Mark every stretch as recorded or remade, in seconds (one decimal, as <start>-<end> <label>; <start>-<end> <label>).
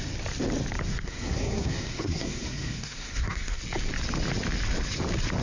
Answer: 0.0-0.8 recorded; 0.8-3.6 remade; 3.6-5.4 recorded